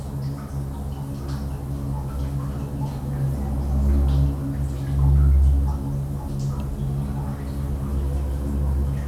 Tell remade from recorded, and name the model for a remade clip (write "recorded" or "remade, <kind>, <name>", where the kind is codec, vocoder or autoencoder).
recorded